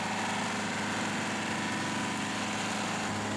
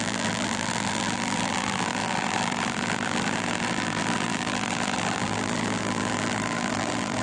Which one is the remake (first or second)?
second